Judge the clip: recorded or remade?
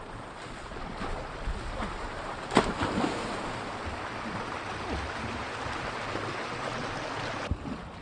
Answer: recorded